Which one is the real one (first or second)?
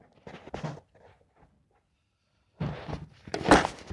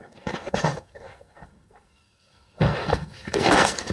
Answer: first